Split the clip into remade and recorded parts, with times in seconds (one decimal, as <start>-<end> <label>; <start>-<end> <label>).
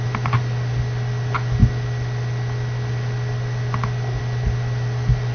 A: 0.0-5.3 recorded